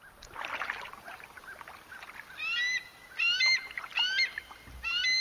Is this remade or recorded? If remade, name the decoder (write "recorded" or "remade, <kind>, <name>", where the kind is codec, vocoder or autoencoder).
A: recorded